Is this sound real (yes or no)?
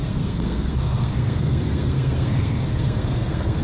no